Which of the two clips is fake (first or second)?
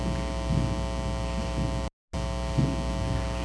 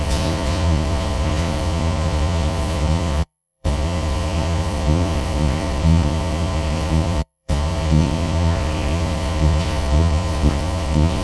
second